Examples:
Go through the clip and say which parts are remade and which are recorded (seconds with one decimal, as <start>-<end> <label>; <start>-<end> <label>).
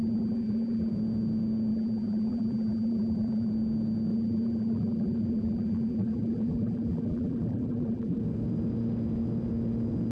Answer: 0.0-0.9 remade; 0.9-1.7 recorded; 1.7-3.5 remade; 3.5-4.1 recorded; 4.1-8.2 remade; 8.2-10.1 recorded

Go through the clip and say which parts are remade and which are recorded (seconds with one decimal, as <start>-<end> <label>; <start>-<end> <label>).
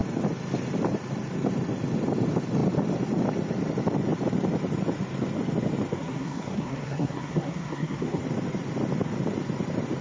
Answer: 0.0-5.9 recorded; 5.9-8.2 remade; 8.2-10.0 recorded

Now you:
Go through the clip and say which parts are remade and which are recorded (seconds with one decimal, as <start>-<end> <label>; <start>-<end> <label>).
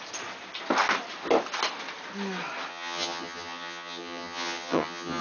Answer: 0.0-2.7 recorded; 2.7-5.2 remade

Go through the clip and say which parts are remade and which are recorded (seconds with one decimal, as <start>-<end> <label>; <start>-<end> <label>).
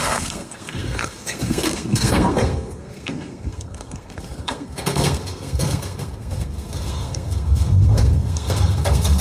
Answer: 0.0-9.2 remade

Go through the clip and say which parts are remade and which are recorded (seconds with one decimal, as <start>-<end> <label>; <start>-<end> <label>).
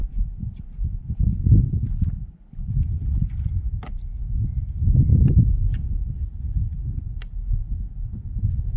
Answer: 0.0-8.8 recorded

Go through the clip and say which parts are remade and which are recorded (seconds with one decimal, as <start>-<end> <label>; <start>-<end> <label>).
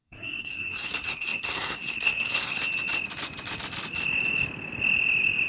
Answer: 0.0-2.6 remade; 2.6-5.5 recorded